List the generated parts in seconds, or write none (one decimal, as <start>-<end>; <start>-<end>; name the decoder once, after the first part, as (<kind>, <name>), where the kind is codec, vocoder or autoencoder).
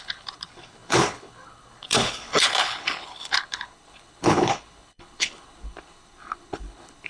0.0-7.1 (codec, HILCodec)